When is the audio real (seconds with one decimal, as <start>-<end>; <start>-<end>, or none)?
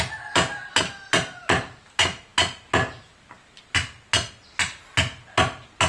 0.0-5.9